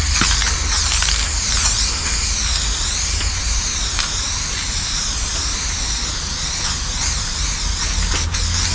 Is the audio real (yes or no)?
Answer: yes